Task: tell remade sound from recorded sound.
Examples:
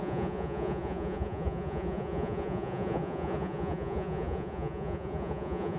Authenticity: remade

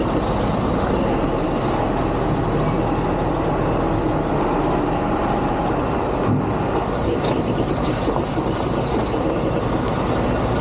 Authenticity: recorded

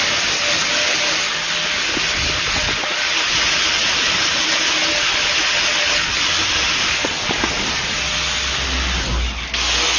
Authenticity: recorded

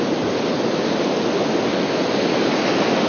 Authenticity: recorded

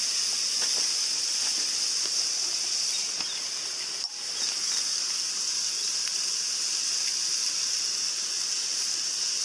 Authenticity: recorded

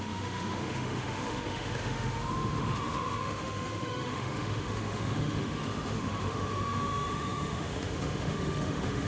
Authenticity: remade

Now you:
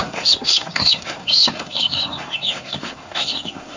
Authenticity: remade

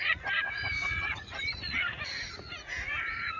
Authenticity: remade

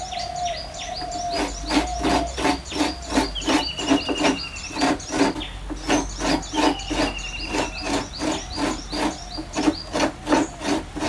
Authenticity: recorded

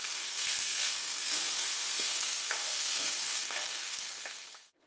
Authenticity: remade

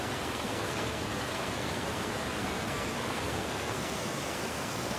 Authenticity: remade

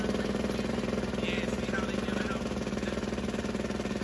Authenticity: recorded